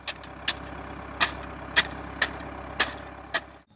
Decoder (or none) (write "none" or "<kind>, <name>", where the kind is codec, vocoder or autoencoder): none